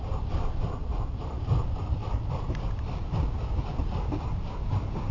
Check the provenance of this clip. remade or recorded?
recorded